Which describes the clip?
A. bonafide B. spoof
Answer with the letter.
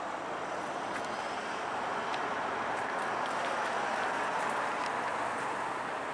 A